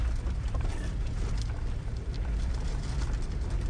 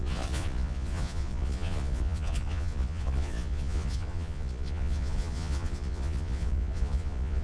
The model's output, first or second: second